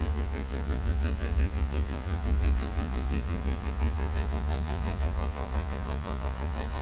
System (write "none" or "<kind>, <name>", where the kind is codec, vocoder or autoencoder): vocoder, Vocos